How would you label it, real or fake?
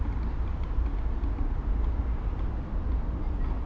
real